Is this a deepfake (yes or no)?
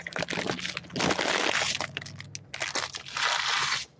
no